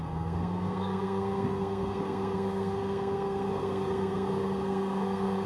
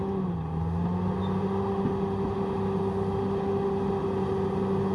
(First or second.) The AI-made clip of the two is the first